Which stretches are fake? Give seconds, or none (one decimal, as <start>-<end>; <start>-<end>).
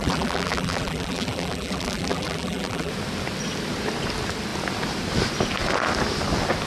0.0-2.9